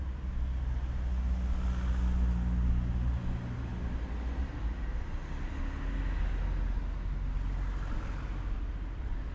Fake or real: real